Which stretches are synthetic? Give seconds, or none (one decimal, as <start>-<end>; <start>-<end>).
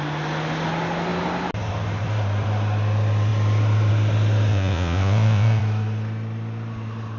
4.5-5.6